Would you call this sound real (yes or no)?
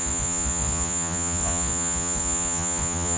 no